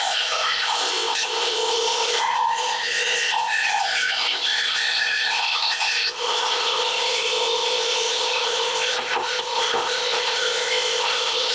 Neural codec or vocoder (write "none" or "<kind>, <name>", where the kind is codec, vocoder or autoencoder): codec, ZipCodec